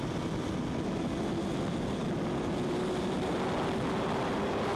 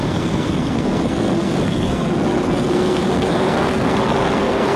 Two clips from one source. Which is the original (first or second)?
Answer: first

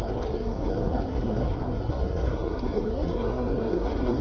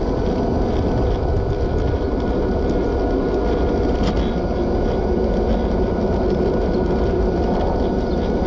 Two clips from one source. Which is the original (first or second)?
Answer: second